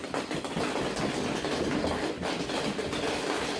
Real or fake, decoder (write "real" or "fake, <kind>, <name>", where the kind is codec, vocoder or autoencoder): real